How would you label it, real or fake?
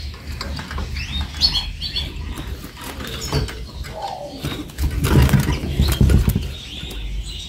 real